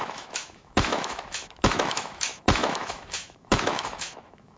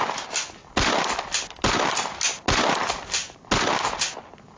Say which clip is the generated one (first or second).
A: first